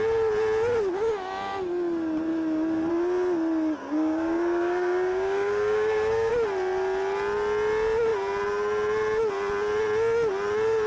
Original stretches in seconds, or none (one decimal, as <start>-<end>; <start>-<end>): 0.0-3.8; 6.3-10.9